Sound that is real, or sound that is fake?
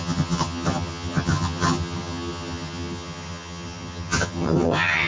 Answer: fake